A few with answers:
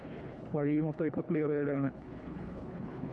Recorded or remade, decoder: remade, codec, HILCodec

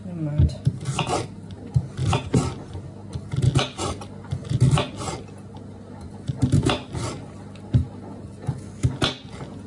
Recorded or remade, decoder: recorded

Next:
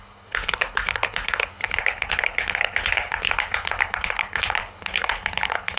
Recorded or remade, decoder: remade, codec, HILCodec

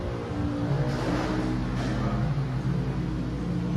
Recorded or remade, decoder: recorded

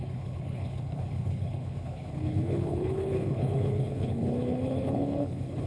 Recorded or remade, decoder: remade, codec, HILCodec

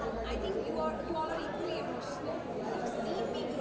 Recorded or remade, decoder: recorded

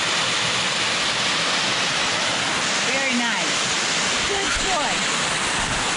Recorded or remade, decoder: recorded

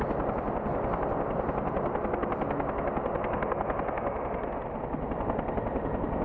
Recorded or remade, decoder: recorded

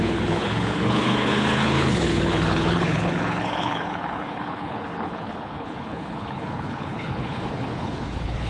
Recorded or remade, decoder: remade, codec, HILCodec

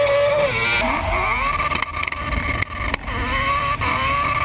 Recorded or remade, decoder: recorded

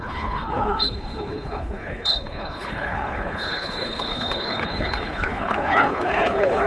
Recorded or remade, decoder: remade, codec, HILCodec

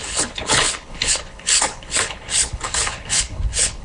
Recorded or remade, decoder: remade, codec, HILCodec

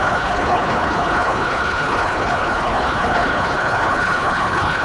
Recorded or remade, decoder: remade, codec, HILCodec